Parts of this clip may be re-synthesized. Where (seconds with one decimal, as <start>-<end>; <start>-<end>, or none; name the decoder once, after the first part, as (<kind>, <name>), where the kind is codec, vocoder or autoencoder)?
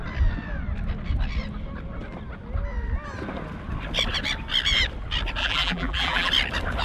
5.4-6.3 (vocoder, BigVGAN v2)